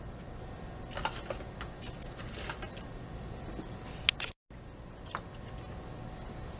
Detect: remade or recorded recorded